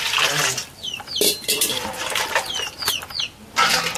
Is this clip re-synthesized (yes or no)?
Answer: no